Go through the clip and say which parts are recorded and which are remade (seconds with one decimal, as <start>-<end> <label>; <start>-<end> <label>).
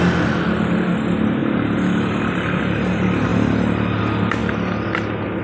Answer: 0.0-5.4 recorded